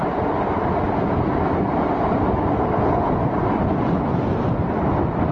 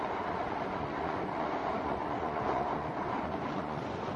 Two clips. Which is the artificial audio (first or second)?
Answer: second